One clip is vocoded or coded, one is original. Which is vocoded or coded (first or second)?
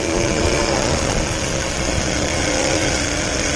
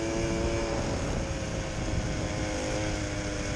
first